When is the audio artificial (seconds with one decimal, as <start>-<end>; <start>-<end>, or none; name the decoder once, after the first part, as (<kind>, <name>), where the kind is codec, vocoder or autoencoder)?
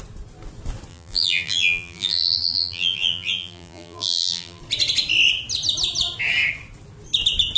0.9-4.6 (vocoder, BigVGAN v2)